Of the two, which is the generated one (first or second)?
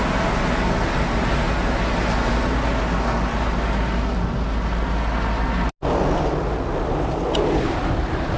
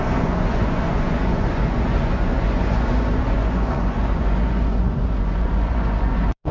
second